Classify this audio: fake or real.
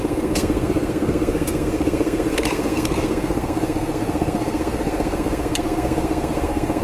fake